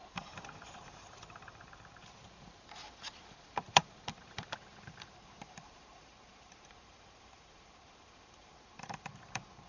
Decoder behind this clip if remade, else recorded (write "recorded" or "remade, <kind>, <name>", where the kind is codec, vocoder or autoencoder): remade, vocoder, BigVGAN v2